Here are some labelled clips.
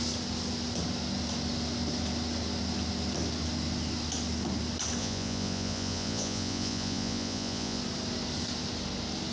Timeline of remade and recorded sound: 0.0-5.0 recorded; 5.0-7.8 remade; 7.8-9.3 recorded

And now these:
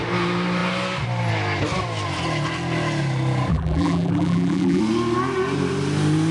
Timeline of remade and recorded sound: 0.0-3.5 recorded; 3.5-4.8 remade; 4.8-6.3 recorded

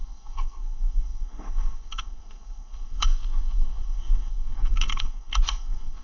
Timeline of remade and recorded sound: 0.0-6.0 remade

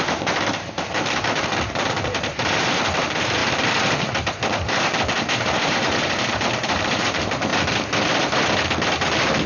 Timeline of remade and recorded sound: 0.0-3.4 remade; 3.4-4.0 recorded; 4.0-7.5 remade; 7.5-9.5 recorded

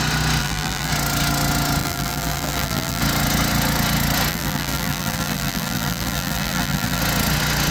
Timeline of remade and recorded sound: 0.0-0.4 recorded; 0.4-0.9 remade; 0.9-1.8 recorded; 1.8-3.0 remade; 3.0-4.3 recorded; 4.3-7.0 remade; 7.0-7.7 recorded

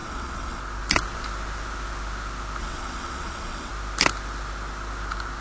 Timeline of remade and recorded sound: 0.0-0.6 remade; 0.6-2.6 recorded; 2.6-3.7 remade; 3.7-5.4 recorded

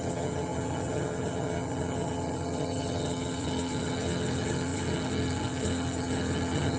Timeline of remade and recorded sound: 0.0-6.8 remade

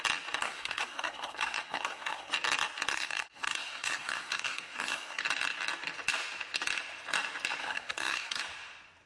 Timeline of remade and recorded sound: 0.0-0.4 recorded; 0.4-2.3 remade; 2.3-2.9 recorded; 2.9-5.2 remade; 5.2-7.6 recorded; 7.6-8.4 remade; 8.4-9.1 recorded